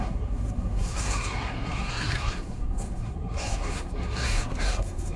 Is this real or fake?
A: fake